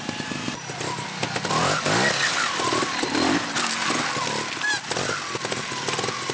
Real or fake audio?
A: real